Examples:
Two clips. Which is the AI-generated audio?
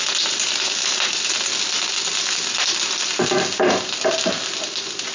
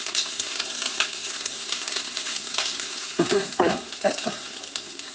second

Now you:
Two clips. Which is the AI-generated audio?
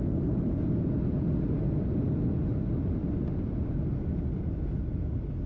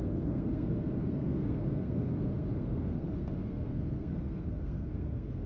second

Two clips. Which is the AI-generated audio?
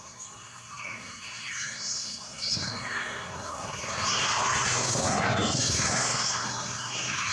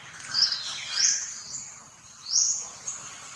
first